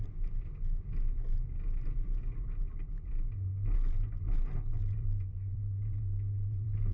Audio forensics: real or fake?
fake